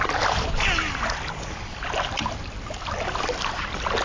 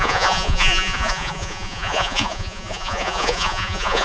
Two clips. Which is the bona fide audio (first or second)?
first